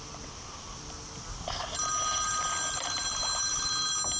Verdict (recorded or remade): recorded